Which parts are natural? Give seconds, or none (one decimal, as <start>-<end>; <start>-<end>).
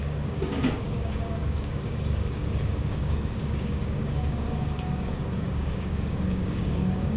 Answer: none